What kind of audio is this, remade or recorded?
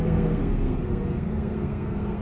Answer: remade